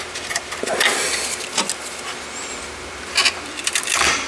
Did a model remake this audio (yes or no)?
no